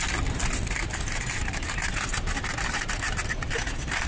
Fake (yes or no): no